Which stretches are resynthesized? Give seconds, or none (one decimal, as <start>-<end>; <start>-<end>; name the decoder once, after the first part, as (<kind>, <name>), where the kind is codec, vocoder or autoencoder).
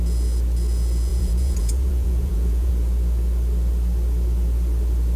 1.1-2.7 (vocoder, Vocos)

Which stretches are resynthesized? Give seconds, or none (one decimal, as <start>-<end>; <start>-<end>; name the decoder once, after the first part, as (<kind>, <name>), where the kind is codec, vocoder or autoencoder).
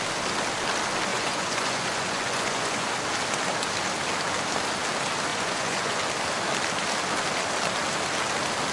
1.1-2.9 (vocoder, Vocos); 5.3-6.0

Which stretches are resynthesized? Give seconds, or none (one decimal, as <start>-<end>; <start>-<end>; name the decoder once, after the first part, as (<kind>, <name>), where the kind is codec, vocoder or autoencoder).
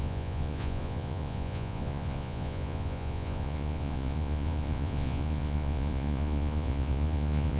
0.0-7.6 (vocoder, Vocos)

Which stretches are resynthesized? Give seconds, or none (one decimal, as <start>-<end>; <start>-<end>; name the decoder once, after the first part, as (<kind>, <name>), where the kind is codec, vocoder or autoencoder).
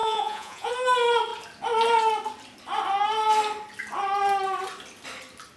0.0-0.7 (vocoder, Vocos)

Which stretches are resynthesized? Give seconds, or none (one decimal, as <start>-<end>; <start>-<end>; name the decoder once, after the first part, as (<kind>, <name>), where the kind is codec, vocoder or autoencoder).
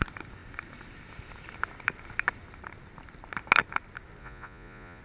4.2-5.0 (vocoder, Vocos)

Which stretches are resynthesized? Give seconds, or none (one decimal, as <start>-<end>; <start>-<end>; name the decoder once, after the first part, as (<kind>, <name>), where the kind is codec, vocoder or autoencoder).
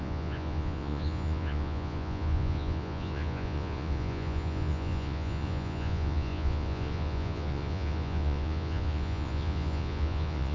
0.0-10.5 (vocoder, Vocos)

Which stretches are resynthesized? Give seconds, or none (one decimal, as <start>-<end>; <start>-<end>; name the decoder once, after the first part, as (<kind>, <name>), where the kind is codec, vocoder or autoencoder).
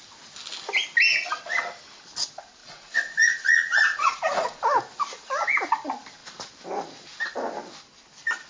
2.6-4.6 (vocoder, Vocos)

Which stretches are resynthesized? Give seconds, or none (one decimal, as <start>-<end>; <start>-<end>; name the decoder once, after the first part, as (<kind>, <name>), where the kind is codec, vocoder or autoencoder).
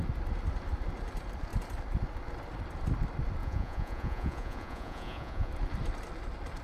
3.4-5.5 (vocoder, Vocos)